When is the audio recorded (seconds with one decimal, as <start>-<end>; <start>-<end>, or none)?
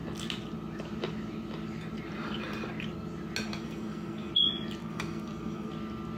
0.0-3.5; 4.3-4.8; 5.7-6.2